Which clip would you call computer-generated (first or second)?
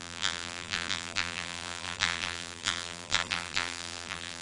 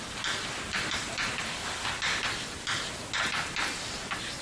first